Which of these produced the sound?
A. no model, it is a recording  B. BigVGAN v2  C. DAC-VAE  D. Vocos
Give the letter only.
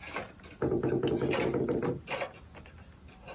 A